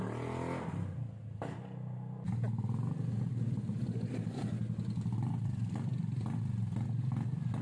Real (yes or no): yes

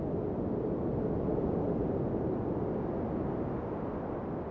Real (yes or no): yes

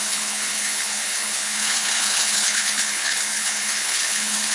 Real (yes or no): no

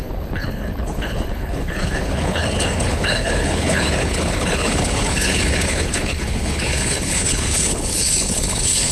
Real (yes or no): no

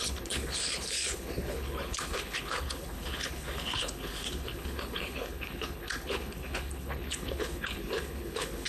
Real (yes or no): no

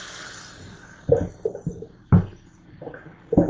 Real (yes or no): yes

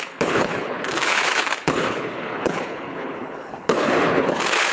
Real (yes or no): no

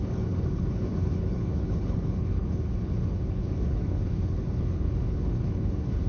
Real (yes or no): no